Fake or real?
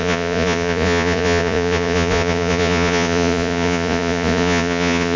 fake